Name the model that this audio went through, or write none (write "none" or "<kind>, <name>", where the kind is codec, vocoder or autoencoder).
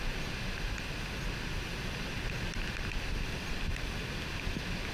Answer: none